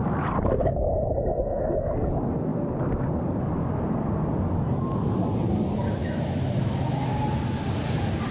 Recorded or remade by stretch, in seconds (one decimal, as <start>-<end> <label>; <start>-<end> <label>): 0.0-1.3 recorded; 1.3-1.9 remade; 1.9-6.0 recorded; 6.0-7.1 remade; 7.1-8.3 recorded